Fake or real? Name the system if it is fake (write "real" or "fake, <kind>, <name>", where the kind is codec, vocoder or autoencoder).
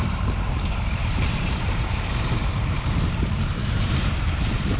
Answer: fake, vocoder, BigVGAN v2